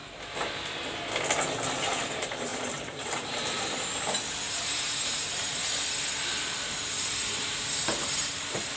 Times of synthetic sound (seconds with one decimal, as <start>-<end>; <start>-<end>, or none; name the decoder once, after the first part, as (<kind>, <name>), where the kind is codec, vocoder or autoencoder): 2.1-5.6 (vocoder, BigVGAN v2); 6.6-8.8